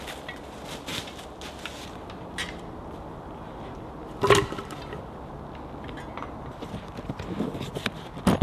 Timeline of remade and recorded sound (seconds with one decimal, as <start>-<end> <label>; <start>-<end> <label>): 0.0-8.4 recorded